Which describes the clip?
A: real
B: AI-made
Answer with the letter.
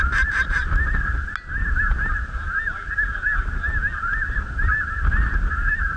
A